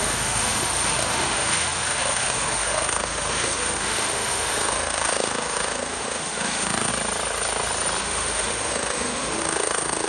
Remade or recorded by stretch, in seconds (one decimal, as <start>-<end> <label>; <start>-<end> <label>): 0.0-6.9 remade; 6.9-8.0 recorded; 8.0-10.1 remade